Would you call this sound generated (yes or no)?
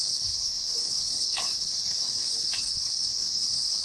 yes